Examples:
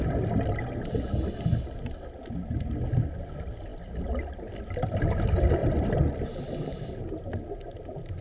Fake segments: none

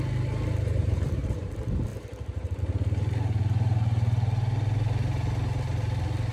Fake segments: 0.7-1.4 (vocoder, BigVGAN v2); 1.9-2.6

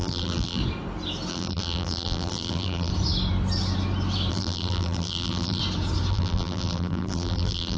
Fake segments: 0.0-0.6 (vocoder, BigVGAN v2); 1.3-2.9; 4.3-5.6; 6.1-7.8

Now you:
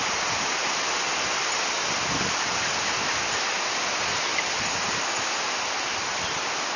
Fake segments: 0.6-1.5 (vocoder, BigVGAN v2)